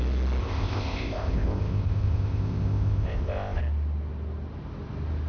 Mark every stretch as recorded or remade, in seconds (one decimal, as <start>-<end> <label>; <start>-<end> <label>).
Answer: 0.0-0.4 recorded; 0.4-3.6 remade; 3.6-5.3 recorded